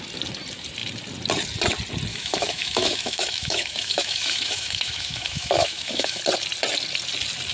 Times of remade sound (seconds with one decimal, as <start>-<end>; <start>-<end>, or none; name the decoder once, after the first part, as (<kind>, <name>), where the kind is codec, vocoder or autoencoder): 2.1-6.2 (autoencoder, DAC-VAE)